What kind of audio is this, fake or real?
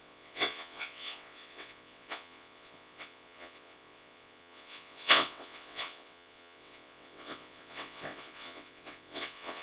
fake